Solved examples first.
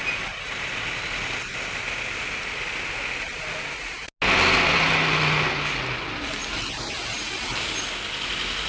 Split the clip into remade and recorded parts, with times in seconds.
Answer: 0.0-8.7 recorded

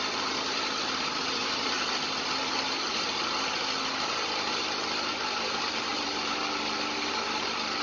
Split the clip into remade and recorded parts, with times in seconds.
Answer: 0.0-5.9 recorded; 5.9-6.4 remade; 6.4-7.8 recorded

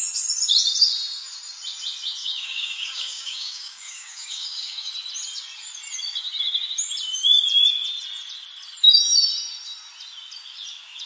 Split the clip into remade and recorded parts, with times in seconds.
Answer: 0.0-2.2 recorded; 2.2-4.9 remade; 4.9-11.1 recorded

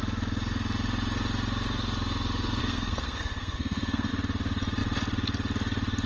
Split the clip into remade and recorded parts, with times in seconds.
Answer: 0.0-2.6 recorded; 2.6-4.1 remade; 4.1-6.1 recorded

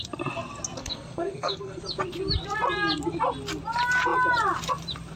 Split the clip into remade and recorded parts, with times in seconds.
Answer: 0.0-0.8 recorded; 0.8-1.8 remade; 1.8-5.2 recorded

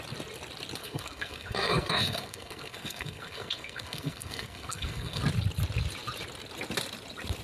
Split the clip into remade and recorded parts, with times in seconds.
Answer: 0.0-0.8 recorded; 0.8-5.2 remade; 5.2-7.4 recorded